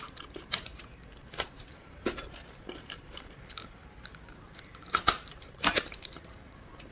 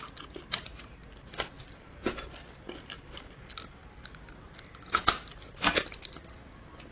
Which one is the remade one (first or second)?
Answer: first